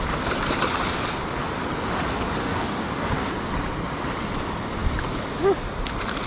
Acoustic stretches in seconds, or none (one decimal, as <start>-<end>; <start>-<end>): 0.0-2.4; 3.3-6.3